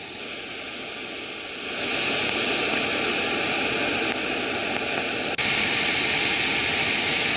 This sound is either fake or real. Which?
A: real